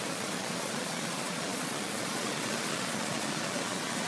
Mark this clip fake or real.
fake